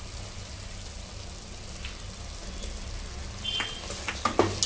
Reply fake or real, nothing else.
real